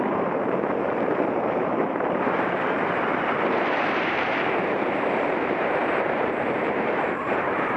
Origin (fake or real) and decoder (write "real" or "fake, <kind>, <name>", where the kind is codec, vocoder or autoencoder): fake, vocoder, BigVGAN v2